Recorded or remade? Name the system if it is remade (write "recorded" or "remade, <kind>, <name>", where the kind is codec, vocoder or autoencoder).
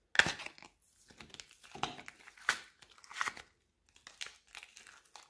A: recorded